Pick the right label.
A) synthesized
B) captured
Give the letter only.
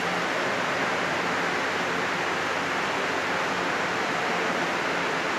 B